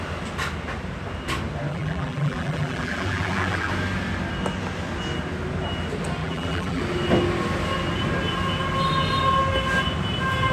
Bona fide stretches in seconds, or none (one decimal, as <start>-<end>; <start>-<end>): 0.0-1.7; 3.7-6.2; 6.8-10.5